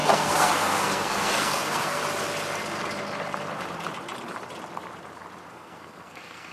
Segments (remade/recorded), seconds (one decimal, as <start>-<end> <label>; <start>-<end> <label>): 0.0-2.0 remade; 2.0-5.5 recorded; 5.5-6.5 remade